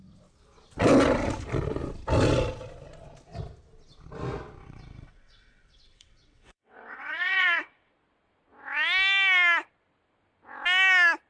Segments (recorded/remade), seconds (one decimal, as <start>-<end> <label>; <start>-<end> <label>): 0.0-4.6 recorded; 4.6-7.9 remade; 7.9-11.3 recorded